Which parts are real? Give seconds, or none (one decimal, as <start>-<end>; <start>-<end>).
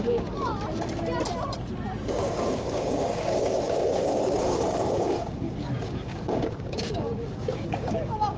0.5-2.1